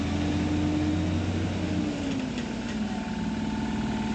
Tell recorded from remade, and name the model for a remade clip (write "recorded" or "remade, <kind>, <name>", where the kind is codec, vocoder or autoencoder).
recorded